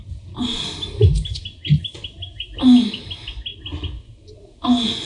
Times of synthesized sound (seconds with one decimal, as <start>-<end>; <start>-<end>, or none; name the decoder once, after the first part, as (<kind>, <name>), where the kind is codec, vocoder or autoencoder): none